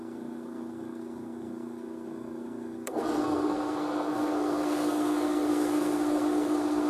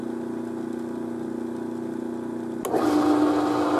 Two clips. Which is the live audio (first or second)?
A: second